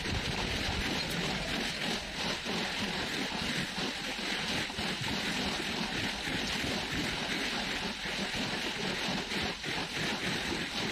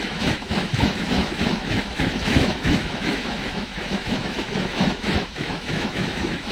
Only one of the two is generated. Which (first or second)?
second